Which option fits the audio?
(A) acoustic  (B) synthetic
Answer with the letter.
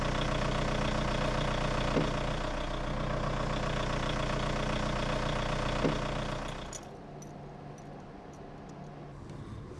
A